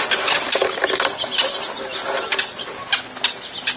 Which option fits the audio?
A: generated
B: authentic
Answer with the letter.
B